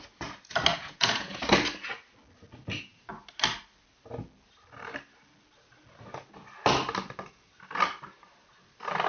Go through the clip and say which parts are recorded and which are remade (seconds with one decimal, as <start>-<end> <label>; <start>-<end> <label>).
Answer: 0.0-0.7 recorded; 0.7-1.4 remade; 1.4-9.1 recorded